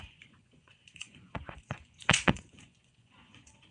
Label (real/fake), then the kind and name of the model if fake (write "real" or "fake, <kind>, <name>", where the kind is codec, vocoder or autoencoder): fake, vocoder, Vocos